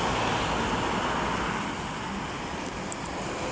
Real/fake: real